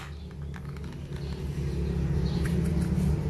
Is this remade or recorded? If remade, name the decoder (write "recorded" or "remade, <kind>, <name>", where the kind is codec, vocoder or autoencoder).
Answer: recorded